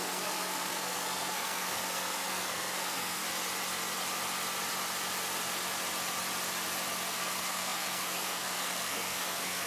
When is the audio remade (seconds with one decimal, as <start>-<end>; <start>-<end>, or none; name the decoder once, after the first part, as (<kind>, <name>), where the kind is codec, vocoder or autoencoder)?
0.0-3.2 (codec, SNAC); 7.1-9.7

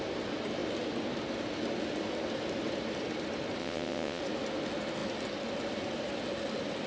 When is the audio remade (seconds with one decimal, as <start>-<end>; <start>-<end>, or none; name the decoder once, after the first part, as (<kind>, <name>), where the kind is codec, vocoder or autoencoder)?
3.6-4.2 (vocoder, WaveNeXt)

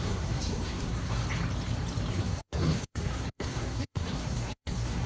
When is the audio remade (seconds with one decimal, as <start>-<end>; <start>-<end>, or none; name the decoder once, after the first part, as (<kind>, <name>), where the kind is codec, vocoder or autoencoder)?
0.0-1.2 (codec, SNAC); 2.1-5.1

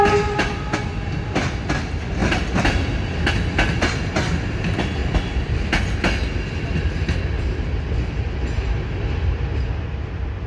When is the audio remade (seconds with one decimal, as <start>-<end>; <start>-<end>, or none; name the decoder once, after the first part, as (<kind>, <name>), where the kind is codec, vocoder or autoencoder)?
2.2-3.3 (vocoder, BigVGAN v2); 5.0-5.9

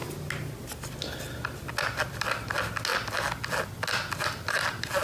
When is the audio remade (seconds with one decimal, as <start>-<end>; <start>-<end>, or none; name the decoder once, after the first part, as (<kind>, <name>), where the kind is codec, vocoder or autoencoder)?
none

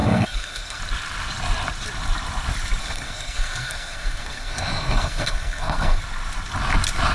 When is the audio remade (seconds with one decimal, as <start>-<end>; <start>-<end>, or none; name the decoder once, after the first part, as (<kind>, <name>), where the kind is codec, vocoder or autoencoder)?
0.0-0.8 (codec, SNAC); 2.8-6.0